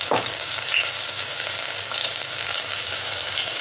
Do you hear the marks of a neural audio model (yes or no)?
yes